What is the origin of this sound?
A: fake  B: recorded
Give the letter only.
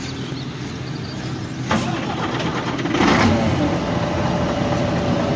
B